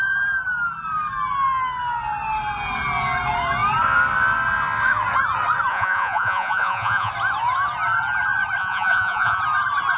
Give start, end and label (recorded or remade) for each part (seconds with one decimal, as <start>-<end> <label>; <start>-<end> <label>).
0.0-5.7 recorded; 5.7-7.1 remade; 7.1-8.6 recorded; 8.6-9.4 remade; 9.4-10.0 recorded